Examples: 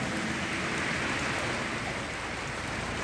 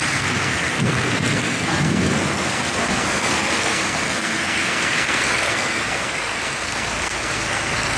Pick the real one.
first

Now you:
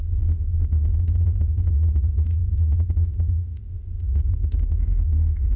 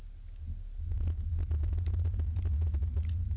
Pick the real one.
second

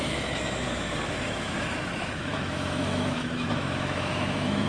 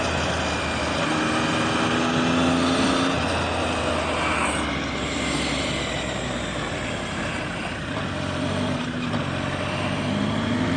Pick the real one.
second